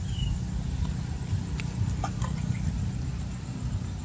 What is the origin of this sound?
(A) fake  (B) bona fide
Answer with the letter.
B